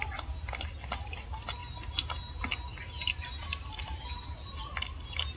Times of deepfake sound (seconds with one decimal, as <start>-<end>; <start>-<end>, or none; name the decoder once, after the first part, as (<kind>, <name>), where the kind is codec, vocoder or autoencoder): none